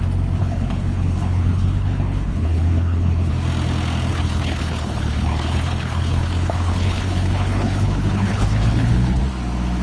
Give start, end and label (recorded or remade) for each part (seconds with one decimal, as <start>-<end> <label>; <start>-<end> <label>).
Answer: 0.0-0.4 recorded; 0.4-3.3 remade; 3.3-4.1 recorded; 4.1-9.2 remade; 9.2-9.8 recorded